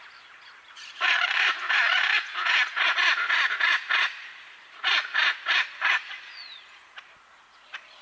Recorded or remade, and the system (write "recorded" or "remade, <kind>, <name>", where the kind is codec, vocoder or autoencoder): remade, vocoder, Vocos